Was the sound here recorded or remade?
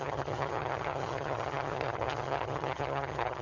remade